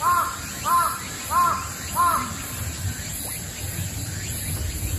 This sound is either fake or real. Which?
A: real